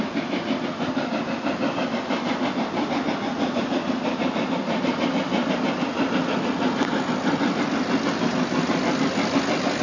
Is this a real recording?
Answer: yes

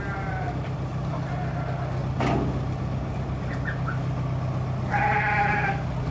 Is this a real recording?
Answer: yes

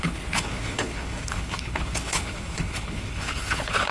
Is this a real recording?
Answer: no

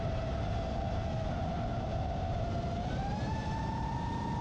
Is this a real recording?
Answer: no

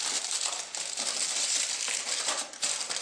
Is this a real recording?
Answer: yes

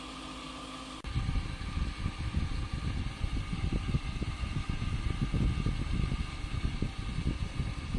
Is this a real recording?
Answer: yes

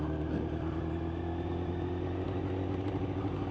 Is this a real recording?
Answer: yes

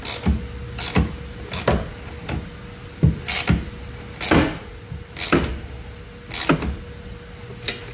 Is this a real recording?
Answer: yes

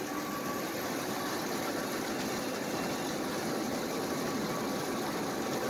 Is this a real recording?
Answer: yes